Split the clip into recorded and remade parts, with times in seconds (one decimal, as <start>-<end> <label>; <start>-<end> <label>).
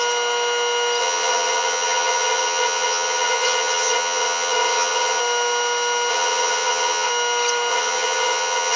0.0-1.0 recorded; 1.0-5.2 remade; 5.2-6.1 recorded; 6.1-7.1 remade; 7.1-7.7 recorded; 7.7-8.8 remade